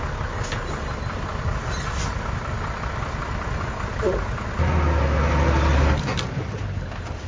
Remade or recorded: recorded